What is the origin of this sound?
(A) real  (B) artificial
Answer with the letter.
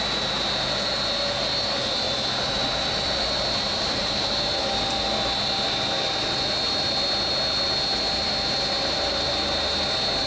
A